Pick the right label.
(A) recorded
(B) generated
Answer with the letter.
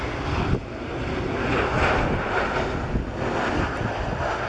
A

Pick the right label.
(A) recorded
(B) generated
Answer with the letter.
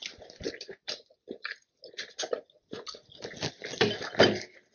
A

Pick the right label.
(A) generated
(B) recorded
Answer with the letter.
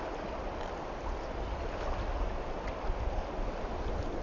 B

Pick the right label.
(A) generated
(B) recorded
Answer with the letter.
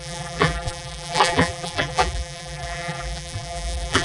A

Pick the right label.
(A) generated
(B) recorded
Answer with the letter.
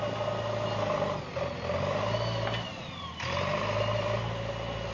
B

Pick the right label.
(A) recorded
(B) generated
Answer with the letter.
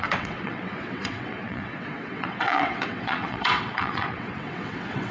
B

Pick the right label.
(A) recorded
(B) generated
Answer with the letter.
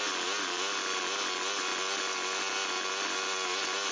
A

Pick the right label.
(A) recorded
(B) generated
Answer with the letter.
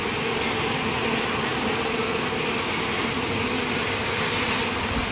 A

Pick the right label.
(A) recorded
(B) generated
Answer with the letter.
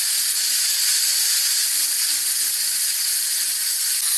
A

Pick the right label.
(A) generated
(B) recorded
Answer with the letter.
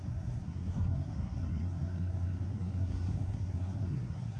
A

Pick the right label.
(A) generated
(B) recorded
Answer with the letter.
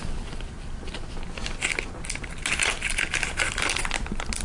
B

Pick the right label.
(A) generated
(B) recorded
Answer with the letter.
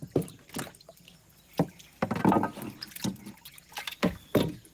B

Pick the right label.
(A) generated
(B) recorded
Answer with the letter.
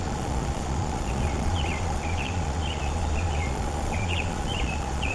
A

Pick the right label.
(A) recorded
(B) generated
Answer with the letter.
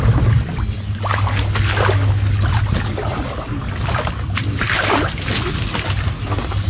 A